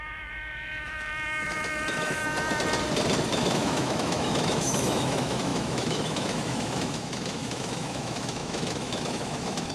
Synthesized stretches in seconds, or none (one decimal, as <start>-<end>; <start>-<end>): 0.0-2.2; 3.3-9.7